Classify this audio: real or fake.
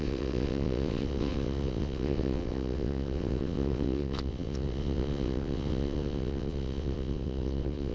fake